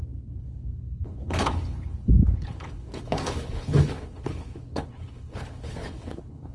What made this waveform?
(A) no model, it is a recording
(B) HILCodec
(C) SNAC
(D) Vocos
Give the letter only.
B